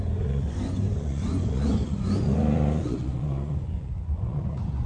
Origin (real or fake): fake